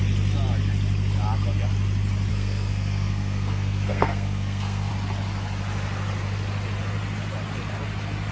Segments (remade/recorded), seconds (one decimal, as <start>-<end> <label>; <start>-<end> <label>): 0.0-2.3 recorded; 2.3-4.9 remade; 4.9-8.3 recorded